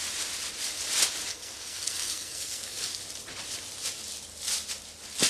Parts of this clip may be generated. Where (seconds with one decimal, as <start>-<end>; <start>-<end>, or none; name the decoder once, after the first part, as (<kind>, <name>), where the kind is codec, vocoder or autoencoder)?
1.3-3.0 (codec, SNAC)